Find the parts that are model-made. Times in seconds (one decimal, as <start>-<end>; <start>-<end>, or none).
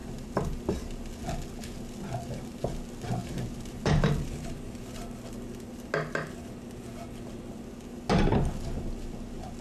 3.2-4.8